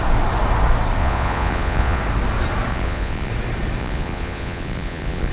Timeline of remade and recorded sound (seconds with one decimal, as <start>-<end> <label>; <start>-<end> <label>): 0.0-1.0 recorded; 1.0-2.0 remade; 2.0-2.7 recorded; 2.7-3.3 remade; 3.3-3.8 recorded; 3.8-5.3 remade